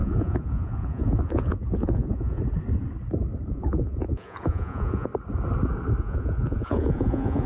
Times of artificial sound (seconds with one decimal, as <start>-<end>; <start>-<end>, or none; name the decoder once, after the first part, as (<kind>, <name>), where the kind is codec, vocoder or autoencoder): 0.0-2.4 (vocoder, Vocos); 3.5-5.1; 6.0-7.5